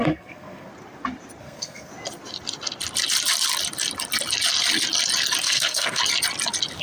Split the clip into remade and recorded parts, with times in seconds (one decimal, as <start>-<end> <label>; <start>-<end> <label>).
0.0-0.7 remade; 0.7-1.4 recorded; 1.4-1.9 remade; 1.9-5.4 recorded; 5.4-6.0 remade; 6.0-6.8 recorded